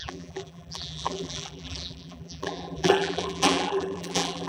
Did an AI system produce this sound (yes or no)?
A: yes